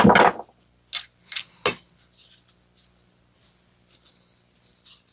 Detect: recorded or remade recorded